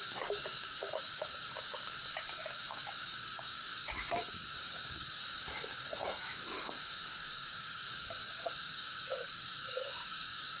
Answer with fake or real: fake